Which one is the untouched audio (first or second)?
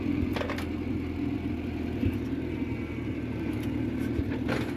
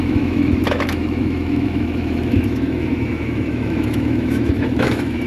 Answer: first